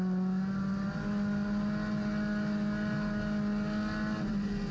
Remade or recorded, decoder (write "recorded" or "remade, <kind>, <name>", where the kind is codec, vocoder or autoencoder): recorded